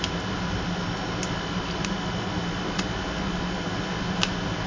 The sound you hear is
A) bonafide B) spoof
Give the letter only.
A